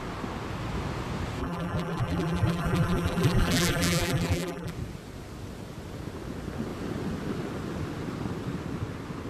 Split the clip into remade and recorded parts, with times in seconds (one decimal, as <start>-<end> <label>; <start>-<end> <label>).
0.0-1.4 recorded; 1.4-4.7 remade; 4.7-9.3 recorded